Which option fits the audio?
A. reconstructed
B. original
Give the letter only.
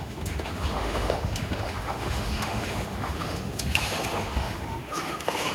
A